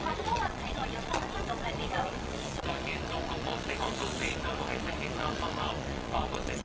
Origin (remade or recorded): remade